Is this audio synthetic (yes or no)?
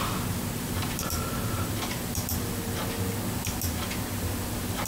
no